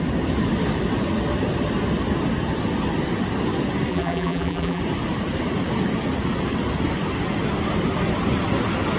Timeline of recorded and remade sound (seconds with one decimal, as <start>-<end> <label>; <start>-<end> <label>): 0.0-3.9 recorded; 3.9-4.8 remade; 4.8-9.0 recorded